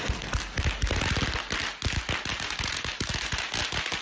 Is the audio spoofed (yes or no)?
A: no